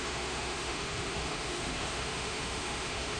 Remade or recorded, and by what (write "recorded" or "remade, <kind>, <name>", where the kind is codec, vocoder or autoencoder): remade, autoencoder, DAC-VAE